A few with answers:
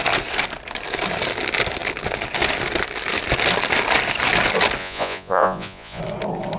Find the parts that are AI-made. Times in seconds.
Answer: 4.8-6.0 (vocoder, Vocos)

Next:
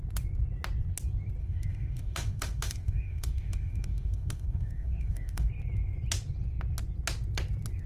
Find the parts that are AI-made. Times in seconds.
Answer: 1.4-5.5 (autoencoder, DAC-VAE)

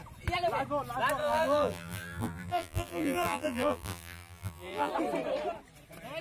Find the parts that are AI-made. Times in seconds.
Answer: 1.2-4.9 (vocoder, BigVGAN v2)